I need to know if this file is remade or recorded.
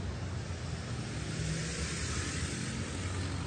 recorded